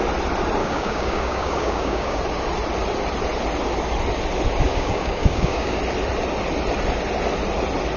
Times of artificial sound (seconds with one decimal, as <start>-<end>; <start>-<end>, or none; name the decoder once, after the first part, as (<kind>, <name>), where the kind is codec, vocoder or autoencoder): 0.6-2.2 (codec, DAC); 4.7-5.8